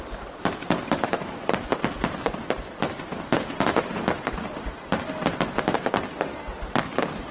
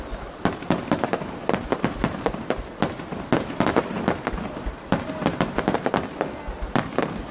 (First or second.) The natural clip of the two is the second